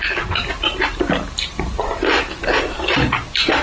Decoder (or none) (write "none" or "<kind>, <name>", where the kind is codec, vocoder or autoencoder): none